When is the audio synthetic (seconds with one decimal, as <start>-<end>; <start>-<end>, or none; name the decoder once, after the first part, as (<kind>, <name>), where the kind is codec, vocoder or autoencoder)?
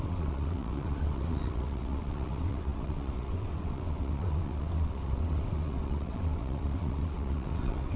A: 0.0-8.0 (vocoder, WaveNeXt)